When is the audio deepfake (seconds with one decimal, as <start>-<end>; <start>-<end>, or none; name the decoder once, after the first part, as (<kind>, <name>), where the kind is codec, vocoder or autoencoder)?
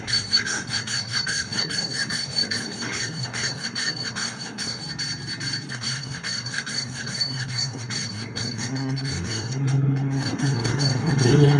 0.0-4.8 (codec, SNAC); 5.7-11.6